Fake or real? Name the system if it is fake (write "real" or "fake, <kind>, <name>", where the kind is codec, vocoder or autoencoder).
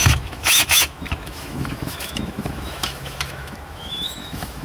fake, autoencoder, DAC-VAE